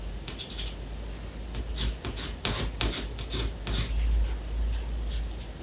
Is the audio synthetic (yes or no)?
no